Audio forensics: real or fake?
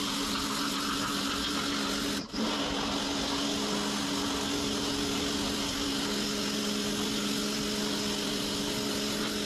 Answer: real